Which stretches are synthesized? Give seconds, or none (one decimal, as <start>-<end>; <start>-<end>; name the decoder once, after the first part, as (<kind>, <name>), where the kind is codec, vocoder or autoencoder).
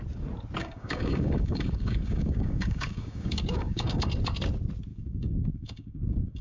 0.6-4.1 (codec, DAC); 4.9-6.4